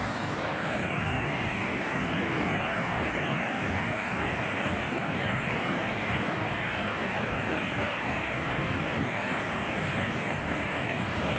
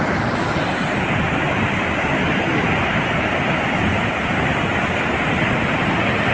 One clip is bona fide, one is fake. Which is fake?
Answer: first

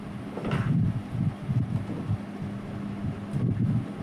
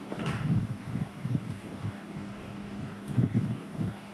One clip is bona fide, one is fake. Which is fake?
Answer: second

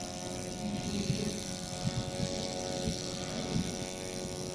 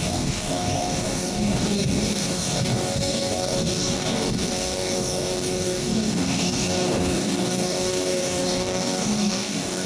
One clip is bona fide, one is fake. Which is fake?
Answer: second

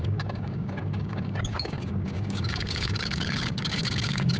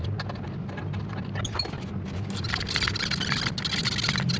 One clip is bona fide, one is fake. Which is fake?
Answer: first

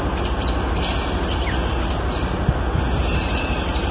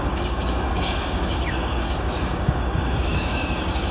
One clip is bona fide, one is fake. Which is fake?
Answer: second